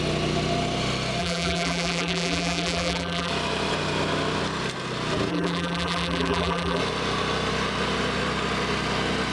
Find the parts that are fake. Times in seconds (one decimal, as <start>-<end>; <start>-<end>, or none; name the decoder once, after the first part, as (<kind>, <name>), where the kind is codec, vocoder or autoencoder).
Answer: 1.2-3.3 (vocoder, BigVGAN v2); 5.3-6.8